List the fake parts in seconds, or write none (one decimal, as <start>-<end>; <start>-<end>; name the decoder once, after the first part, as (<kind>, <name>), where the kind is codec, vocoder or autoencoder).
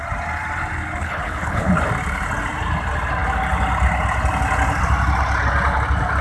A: 1.0-1.7 (codec, HILCodec)